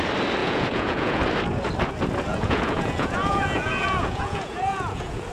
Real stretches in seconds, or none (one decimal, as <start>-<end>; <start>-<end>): 0.0-0.4; 1.2-2.3